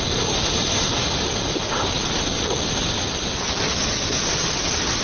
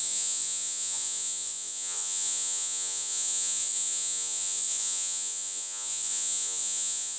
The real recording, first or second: first